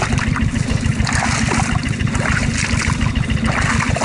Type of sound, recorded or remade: recorded